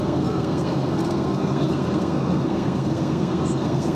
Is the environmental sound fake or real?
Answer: fake